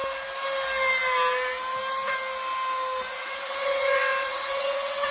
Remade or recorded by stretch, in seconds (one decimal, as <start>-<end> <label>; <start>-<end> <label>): 0.0-3.1 recorded; 3.1-5.1 remade